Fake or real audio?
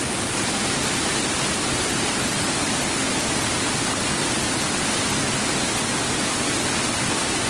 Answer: real